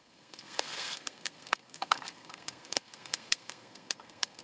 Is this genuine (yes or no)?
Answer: no